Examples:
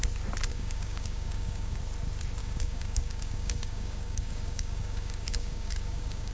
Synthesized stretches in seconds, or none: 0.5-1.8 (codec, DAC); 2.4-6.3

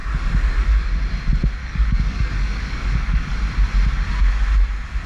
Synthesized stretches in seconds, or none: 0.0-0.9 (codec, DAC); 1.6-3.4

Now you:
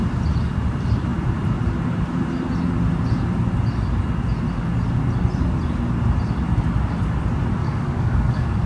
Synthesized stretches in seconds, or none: 7.6-8.7 (codec, DAC)